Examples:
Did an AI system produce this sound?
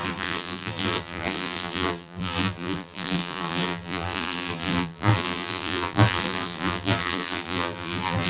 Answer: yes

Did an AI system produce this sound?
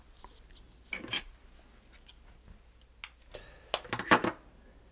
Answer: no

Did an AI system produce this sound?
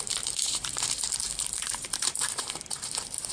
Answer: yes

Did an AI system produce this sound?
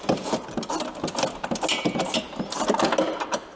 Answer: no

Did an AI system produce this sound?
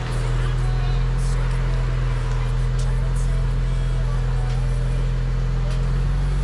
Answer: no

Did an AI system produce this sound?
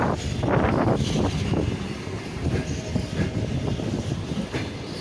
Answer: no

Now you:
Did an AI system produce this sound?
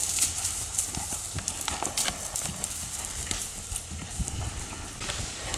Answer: no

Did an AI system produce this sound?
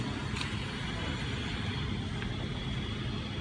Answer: no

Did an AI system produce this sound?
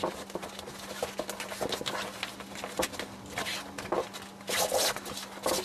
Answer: no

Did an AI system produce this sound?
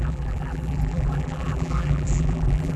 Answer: yes